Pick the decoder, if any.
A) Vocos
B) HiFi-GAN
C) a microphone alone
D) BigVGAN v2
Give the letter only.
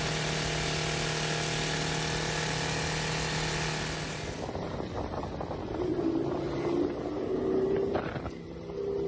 C